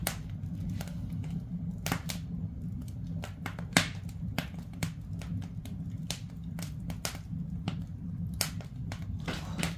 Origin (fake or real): real